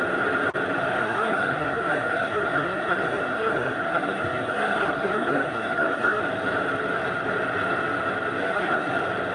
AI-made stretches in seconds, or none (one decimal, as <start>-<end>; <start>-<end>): 1.0-6.2; 8.4-8.9

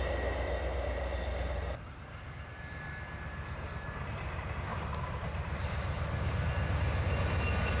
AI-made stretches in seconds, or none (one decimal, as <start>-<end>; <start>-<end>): none